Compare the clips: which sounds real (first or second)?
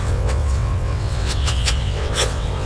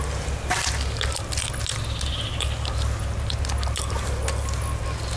second